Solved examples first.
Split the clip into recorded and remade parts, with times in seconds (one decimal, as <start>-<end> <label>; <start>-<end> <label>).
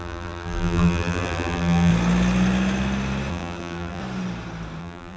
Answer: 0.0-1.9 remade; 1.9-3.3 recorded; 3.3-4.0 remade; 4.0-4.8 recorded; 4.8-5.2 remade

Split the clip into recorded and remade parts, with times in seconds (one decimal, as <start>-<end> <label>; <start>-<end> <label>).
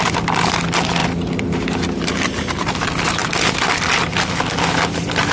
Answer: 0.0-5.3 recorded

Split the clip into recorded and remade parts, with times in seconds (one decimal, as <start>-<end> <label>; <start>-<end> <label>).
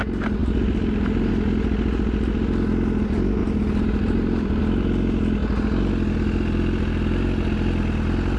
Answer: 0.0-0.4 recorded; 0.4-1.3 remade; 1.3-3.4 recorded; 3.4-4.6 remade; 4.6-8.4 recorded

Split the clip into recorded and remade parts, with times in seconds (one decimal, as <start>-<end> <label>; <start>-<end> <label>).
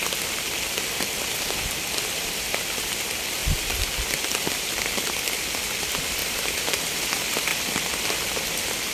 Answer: 0.0-6.2 recorded; 6.2-7.1 remade; 7.1-8.9 recorded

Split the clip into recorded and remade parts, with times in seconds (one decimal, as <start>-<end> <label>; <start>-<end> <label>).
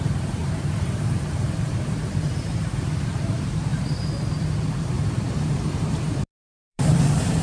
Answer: 0.0-3.7 remade; 3.7-4.7 recorded; 4.7-7.4 remade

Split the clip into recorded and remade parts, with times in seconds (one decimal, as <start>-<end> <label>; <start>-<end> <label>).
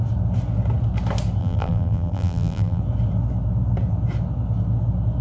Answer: 0.0-1.4 recorded; 1.4-2.8 remade; 2.8-5.2 recorded